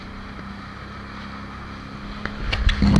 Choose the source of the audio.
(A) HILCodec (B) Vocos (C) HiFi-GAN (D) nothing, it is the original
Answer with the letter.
D